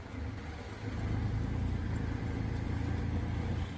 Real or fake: real